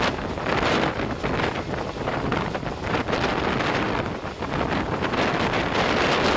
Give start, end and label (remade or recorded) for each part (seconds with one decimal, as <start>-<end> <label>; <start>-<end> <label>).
0.0-6.4 recorded